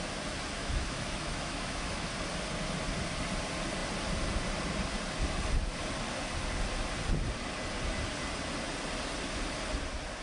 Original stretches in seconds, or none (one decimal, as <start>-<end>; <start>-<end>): 0.0-0.6; 2.1-10.2